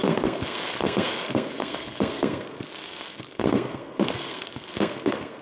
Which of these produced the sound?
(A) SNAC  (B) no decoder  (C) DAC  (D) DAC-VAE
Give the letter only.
A